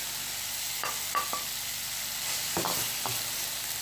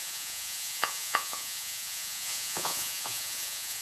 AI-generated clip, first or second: second